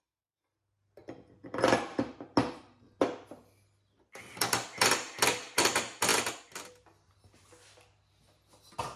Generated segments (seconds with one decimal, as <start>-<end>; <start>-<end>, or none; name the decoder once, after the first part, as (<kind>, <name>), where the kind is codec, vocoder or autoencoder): none